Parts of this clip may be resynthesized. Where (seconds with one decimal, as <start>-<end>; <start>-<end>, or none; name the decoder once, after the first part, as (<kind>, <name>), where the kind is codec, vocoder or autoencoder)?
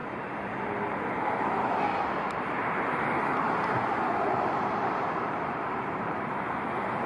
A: 4.3-7.1 (vocoder, BigVGAN v2)